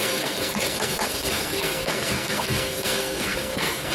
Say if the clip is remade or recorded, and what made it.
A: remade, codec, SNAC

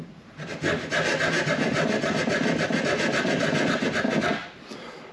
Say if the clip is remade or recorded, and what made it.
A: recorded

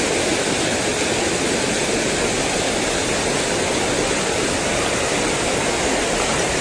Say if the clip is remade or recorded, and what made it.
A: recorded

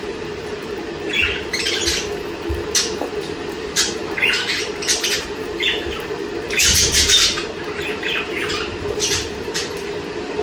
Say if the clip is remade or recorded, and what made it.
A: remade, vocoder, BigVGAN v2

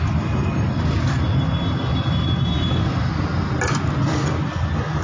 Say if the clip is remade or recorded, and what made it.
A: recorded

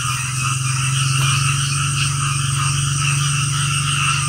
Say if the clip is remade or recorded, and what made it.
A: recorded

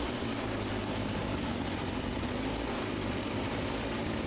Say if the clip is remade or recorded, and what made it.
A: recorded